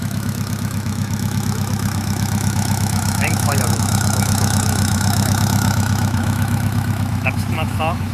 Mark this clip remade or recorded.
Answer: remade